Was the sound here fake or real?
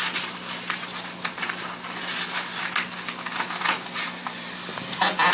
real